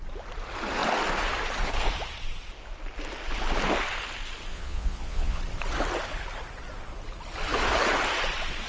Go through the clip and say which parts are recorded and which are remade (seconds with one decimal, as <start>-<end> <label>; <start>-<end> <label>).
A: 0.0-4.5 recorded; 4.5-5.4 remade; 5.4-8.7 recorded